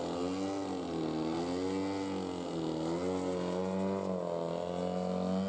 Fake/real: real